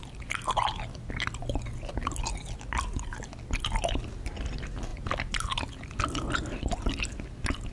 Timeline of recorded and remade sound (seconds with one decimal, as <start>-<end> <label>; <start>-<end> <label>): 0.0-7.7 recorded